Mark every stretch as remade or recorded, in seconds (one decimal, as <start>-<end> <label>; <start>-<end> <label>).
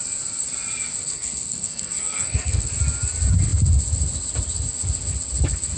0.0-1.0 recorded; 1.0-2.7 remade; 2.7-5.8 recorded